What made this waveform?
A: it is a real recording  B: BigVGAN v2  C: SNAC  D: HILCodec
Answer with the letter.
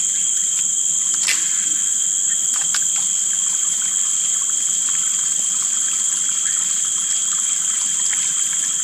A